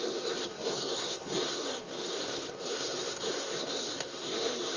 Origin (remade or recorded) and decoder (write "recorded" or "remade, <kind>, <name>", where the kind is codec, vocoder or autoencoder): remade, codec, SNAC